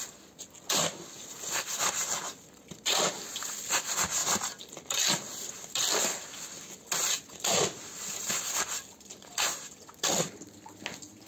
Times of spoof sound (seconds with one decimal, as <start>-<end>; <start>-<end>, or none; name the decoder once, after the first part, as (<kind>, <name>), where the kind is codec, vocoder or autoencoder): none